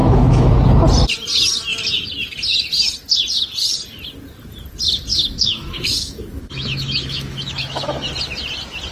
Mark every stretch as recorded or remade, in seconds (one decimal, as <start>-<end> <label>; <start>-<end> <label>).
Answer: 0.0-0.5 remade; 0.5-5.1 recorded; 5.1-8.1 remade; 8.1-8.9 recorded